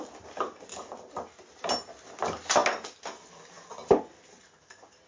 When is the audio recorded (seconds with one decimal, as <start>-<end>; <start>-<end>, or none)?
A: 0.0-5.1